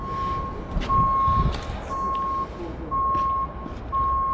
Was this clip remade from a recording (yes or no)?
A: no